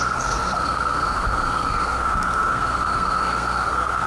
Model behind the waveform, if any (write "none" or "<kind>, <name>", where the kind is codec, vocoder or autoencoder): codec, SNAC